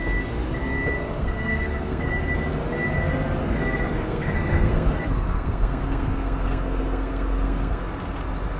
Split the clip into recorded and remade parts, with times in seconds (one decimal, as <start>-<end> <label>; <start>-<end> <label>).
0.0-1.2 recorded; 1.2-2.1 remade; 2.1-3.4 recorded; 3.4-7.8 remade; 7.8-8.6 recorded